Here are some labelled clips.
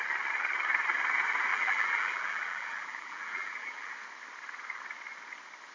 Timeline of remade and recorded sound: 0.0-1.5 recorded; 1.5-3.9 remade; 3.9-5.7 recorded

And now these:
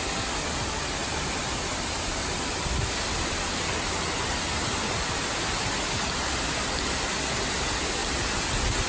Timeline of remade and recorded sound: 0.0-1.0 recorded; 1.0-2.9 remade; 2.9-8.9 recorded

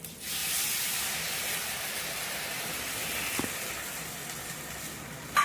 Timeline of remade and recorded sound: 0.0-0.4 recorded; 0.4-1.7 remade; 1.7-2.2 recorded; 2.2-2.9 remade; 2.9-5.4 recorded

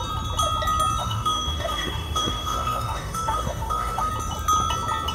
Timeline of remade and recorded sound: 0.0-1.0 recorded; 1.0-4.1 remade; 4.1-5.1 recorded

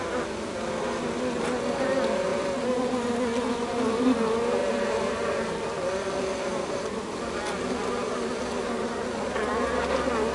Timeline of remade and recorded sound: 0.0-2.3 recorded; 2.3-3.1 remade; 3.1-4.6 recorded; 4.6-5.3 remade; 5.3-10.3 recorded

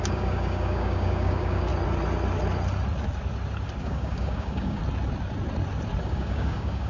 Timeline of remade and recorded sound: 0.0-1.7 remade; 1.7-3.8 recorded; 3.8-4.8 remade; 4.8-6.0 recorded; 6.0-6.9 remade

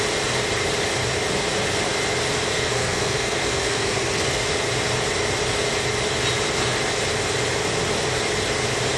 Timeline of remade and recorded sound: 0.0-2.5 recorded; 2.5-4.5 remade; 4.5-9.0 recorded